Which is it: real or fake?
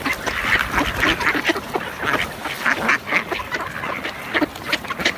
real